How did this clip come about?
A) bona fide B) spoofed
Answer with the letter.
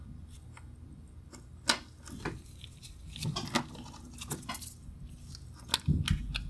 A